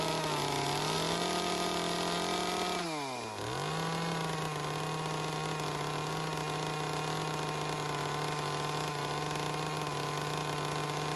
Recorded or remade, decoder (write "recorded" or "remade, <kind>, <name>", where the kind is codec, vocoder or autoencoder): recorded